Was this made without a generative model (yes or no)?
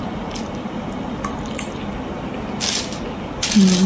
yes